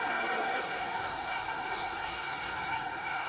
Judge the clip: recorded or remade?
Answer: remade